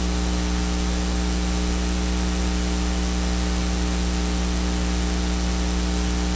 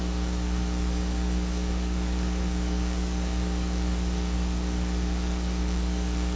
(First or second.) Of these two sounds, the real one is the first